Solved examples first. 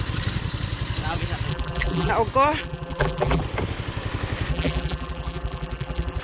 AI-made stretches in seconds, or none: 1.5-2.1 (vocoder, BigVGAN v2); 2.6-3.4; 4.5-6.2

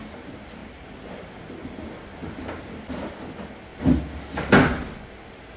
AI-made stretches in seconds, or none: 0.6-1.3 (vocoder, BigVGAN v2); 3.7-4.5

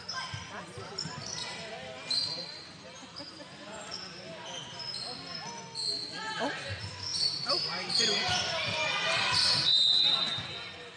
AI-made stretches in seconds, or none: 7.1-8.3 (vocoder, BigVGAN v2)